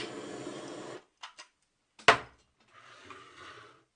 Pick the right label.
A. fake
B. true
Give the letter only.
B